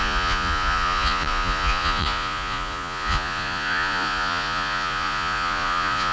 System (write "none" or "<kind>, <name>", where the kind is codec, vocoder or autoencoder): vocoder, Vocos